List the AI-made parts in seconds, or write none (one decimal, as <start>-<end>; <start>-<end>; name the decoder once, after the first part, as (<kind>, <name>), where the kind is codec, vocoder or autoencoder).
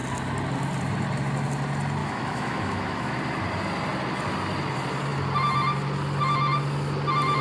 2.0-3.1 (autoencoder, DAC-VAE)